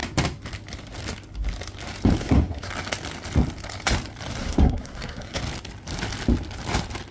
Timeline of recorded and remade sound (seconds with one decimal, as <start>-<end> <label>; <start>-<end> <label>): 0.0-2.2 recorded; 2.2-2.7 remade; 2.7-4.4 recorded; 4.4-5.4 remade; 5.4-7.1 recorded